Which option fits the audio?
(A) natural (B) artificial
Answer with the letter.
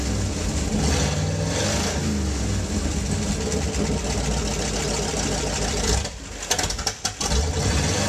A